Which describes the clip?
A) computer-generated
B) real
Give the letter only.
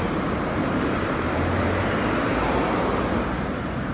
A